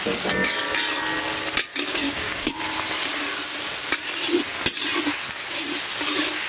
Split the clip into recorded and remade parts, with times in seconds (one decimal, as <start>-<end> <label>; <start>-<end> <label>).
0.0-1.7 recorded; 1.7-2.6 remade; 2.6-6.5 recorded